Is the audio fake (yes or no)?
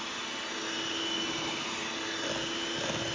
no